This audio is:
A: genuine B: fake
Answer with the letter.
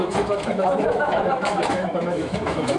B